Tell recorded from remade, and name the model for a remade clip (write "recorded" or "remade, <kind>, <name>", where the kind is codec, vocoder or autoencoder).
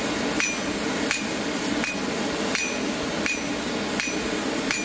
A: recorded